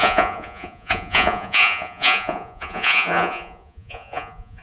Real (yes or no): no